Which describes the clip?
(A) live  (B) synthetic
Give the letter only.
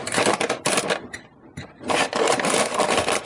B